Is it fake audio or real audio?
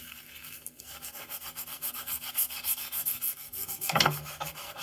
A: fake